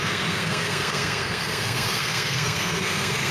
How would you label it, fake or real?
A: fake